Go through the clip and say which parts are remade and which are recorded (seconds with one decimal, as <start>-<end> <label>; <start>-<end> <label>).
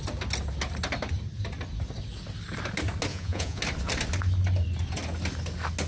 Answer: 0.0-3.1 recorded; 3.1-3.6 remade; 3.6-5.9 recorded